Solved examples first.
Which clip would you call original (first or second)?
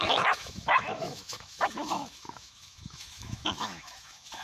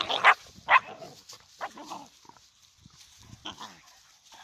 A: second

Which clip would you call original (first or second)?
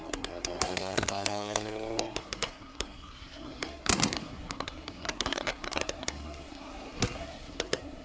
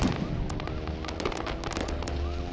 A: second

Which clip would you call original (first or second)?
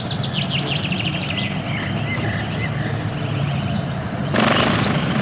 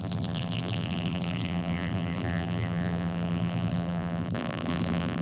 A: first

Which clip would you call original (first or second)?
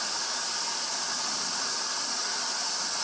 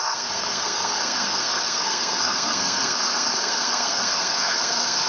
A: first